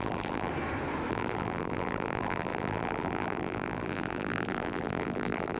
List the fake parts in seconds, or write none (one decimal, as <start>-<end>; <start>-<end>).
0.0-0.5; 1.1-5.6